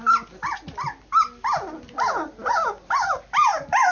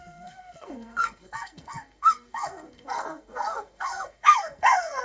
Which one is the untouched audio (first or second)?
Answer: first